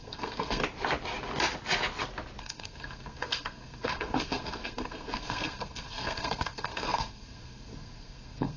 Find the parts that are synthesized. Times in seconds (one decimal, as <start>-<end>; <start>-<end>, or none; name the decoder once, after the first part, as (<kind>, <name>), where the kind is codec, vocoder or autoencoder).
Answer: 0.0-0.6 (codec, SNAC); 2.4-8.6